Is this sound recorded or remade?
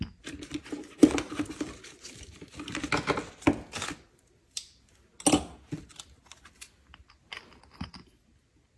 recorded